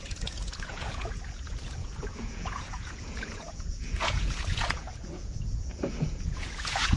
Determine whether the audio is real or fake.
fake